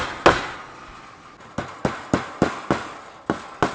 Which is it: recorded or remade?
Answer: recorded